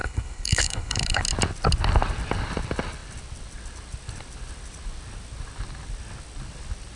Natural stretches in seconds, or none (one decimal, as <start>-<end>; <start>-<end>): 1.2-7.0